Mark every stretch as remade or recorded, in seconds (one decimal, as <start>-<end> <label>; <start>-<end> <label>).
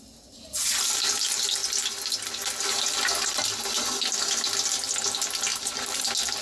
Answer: 0.0-5.5 recorded; 5.5-6.0 remade; 6.0-6.4 recorded